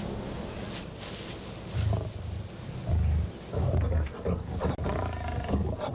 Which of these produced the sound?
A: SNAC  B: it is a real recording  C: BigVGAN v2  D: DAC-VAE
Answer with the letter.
B